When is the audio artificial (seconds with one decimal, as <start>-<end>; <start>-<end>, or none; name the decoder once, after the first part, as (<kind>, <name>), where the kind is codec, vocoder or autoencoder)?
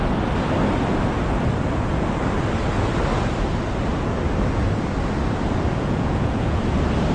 5.7-6.6 (vocoder, Vocos)